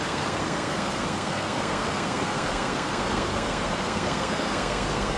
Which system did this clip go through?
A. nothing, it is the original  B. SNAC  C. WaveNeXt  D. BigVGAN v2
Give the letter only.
B